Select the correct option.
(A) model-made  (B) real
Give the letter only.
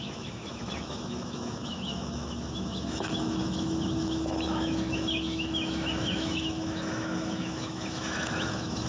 A